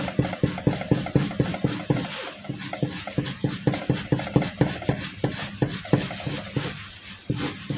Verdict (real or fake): real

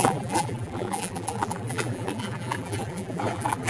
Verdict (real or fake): fake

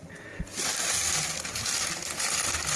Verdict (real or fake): real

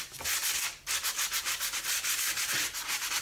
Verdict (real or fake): real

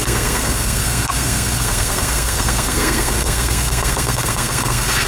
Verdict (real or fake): fake